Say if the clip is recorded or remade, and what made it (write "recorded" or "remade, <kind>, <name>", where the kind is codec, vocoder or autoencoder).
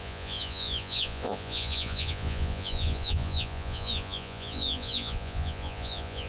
remade, vocoder, Vocos